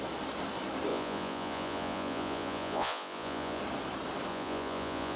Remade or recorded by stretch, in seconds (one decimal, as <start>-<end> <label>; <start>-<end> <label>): 0.0-0.9 recorded; 0.9-3.6 remade; 3.6-4.3 recorded; 4.3-5.2 remade